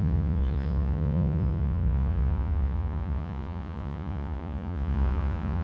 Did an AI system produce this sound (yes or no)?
yes